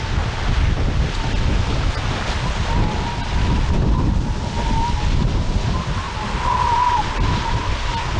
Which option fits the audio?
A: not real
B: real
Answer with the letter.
B